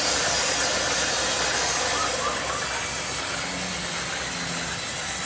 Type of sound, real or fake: real